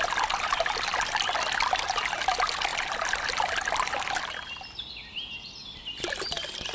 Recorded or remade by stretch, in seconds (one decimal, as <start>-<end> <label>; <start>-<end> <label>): 0.0-6.7 recorded